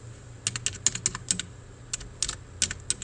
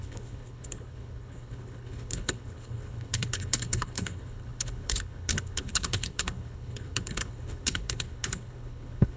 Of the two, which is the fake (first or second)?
second